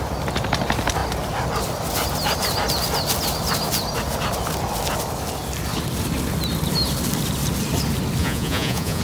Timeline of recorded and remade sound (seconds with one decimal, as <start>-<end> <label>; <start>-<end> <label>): 0.0-8.2 recorded; 8.2-9.0 remade